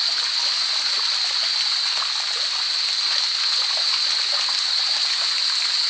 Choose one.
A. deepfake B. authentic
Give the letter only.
B